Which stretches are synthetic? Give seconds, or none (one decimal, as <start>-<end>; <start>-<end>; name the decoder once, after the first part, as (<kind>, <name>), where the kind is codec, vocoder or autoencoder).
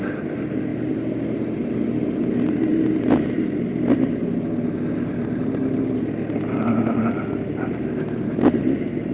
none